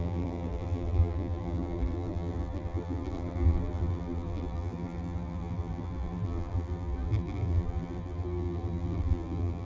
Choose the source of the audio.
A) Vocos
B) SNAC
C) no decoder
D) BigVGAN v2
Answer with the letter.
D